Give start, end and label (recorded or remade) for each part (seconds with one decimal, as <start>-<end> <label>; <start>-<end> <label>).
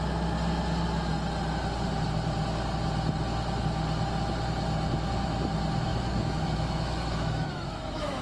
0.0-5.9 recorded; 5.9-8.2 remade